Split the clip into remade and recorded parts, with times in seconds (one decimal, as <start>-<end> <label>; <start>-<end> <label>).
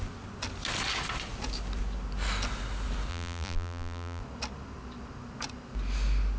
0.0-3.1 recorded; 3.1-4.2 remade; 4.2-6.4 recorded